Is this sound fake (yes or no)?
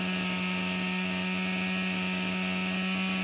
no